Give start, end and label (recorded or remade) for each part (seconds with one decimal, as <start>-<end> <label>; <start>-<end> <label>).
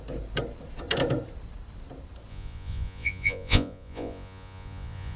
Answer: 0.0-2.3 recorded; 2.3-5.2 remade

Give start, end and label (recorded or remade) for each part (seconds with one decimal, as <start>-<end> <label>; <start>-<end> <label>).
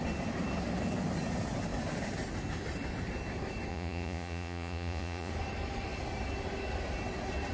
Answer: 0.0-3.7 recorded; 3.7-5.3 remade; 5.3-7.5 recorded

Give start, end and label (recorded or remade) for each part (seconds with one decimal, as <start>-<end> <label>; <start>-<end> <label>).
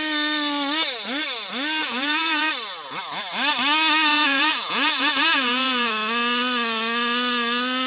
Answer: 0.0-1.8 recorded; 1.8-2.5 remade; 2.5-4.1 recorded; 4.1-5.9 remade; 5.9-7.9 recorded